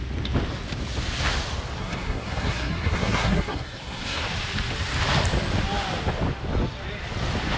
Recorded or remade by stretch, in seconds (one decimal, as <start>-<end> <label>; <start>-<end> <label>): 0.0-1.8 recorded; 1.8-4.2 remade; 4.2-7.6 recorded